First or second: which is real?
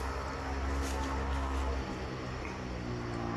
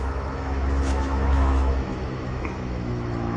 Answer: first